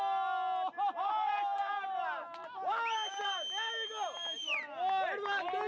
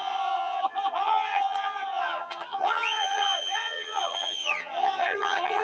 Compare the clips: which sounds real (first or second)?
first